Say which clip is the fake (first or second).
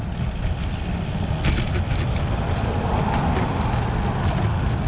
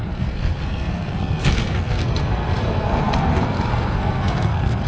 second